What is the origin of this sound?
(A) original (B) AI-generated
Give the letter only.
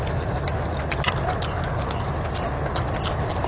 A